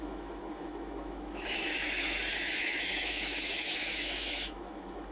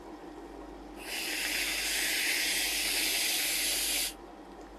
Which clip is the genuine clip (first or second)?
second